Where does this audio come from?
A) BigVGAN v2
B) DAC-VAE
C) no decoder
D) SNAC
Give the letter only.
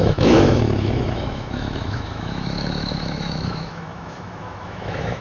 B